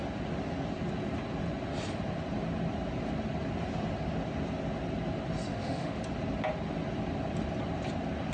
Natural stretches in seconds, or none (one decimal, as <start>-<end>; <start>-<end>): 0.0-5.5; 6.0-8.3